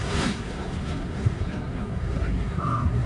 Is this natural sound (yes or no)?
no